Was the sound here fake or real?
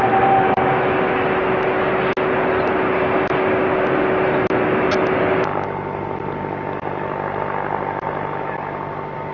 real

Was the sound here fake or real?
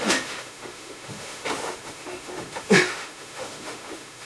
fake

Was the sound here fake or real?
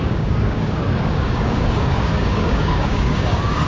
fake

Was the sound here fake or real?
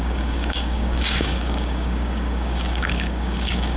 fake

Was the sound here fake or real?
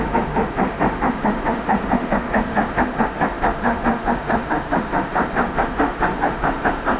fake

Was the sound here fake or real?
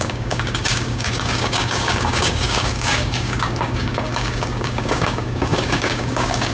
fake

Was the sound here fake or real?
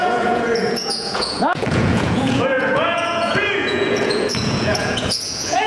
fake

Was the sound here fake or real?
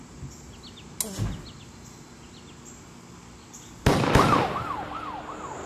real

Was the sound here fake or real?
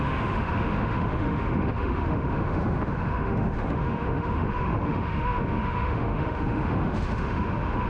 fake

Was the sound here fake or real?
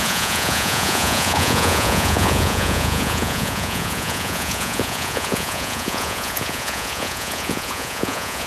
fake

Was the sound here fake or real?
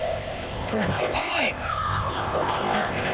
fake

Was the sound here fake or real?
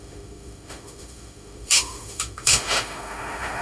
fake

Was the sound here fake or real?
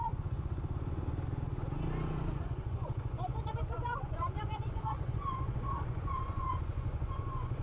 fake